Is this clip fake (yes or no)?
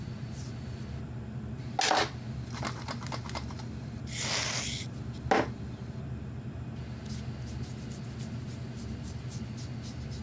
no